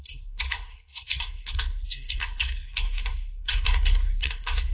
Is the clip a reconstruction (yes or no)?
yes